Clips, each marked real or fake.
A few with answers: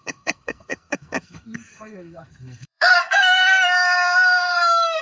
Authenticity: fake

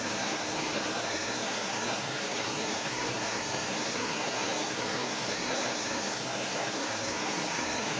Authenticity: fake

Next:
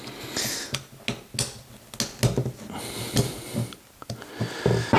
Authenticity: real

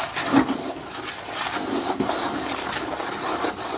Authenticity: real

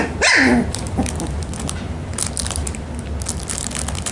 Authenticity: real